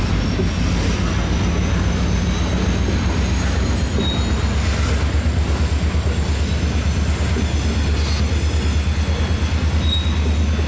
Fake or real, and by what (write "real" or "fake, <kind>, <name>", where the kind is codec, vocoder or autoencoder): real